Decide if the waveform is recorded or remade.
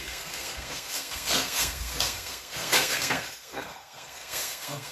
remade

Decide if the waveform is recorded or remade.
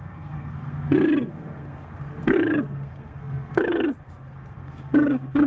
remade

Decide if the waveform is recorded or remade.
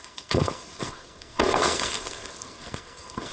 remade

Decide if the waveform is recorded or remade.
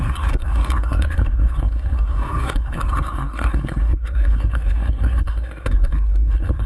remade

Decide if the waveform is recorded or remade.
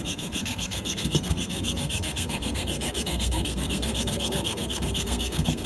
remade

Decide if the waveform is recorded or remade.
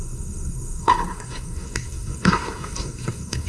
remade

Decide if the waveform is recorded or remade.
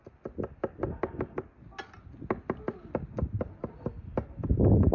recorded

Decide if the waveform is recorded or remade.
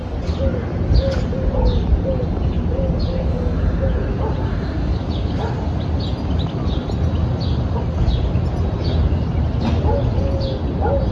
recorded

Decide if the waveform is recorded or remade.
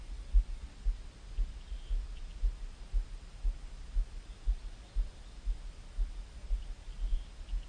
recorded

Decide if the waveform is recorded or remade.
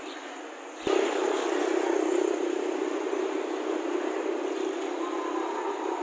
recorded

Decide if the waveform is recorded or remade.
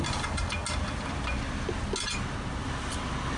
recorded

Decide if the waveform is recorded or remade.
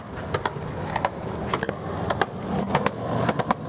recorded